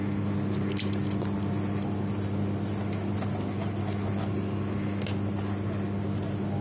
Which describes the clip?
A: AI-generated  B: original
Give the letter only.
B